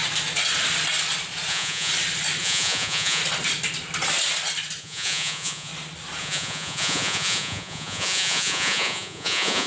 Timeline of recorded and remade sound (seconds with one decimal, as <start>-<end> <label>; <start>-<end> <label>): 0.0-1.5 recorded; 1.5-1.9 remade; 1.9-2.4 recorded; 2.4-3.2 remade; 3.2-4.8 recorded; 4.8-5.7 remade; 5.7-6.2 recorded; 6.2-9.7 remade